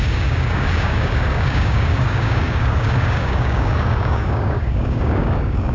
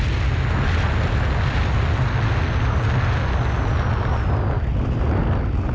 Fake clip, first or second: first